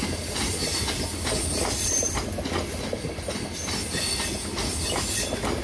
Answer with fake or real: real